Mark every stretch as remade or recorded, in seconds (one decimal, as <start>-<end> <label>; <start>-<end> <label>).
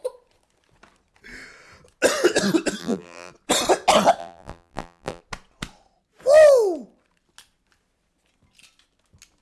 0.0-2.8 recorded; 2.8-3.3 remade; 3.3-4.2 recorded; 4.2-5.2 remade; 5.2-9.4 recorded